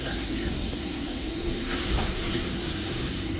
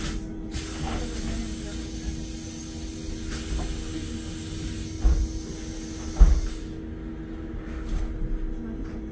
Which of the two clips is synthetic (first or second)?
first